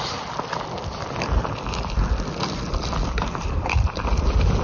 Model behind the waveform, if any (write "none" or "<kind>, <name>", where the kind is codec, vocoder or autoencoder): none